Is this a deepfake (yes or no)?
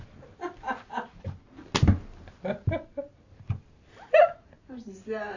no